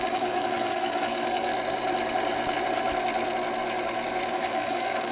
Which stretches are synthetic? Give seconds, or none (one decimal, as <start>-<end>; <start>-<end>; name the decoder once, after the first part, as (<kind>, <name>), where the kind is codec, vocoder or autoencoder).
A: 0.0-1.5 (codec, DAC); 4.3-5.1